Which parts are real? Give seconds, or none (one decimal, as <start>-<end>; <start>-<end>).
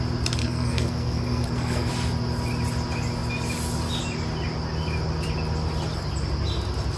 0.0-0.4; 1.9-7.0